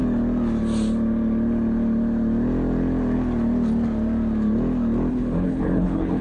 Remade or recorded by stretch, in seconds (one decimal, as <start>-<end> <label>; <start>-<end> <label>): 0.0-5.1 recorded; 5.1-6.2 remade